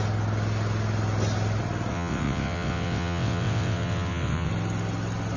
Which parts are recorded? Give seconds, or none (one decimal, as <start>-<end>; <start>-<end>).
0.0-1.9; 4.5-5.4